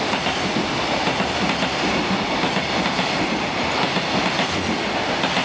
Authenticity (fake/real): real